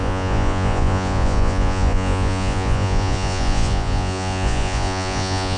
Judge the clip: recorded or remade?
remade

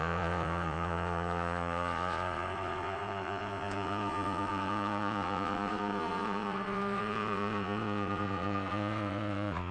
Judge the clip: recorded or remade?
remade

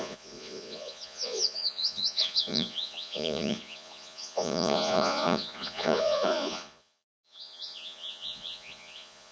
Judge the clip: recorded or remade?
remade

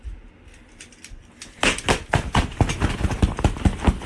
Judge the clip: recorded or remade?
recorded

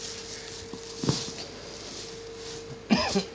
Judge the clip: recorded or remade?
recorded